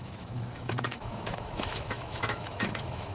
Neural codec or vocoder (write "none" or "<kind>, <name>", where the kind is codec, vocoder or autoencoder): autoencoder, DAC-VAE